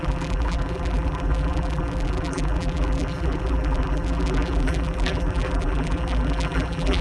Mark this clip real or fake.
fake